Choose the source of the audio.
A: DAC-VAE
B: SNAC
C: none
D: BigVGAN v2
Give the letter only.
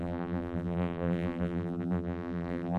D